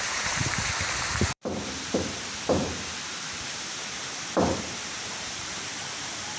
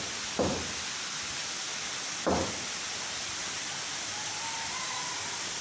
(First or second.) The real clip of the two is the second